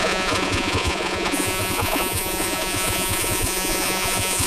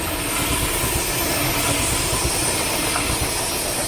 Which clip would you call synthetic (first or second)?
first